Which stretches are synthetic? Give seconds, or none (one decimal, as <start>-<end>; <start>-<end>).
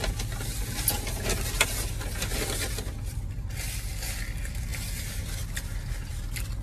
none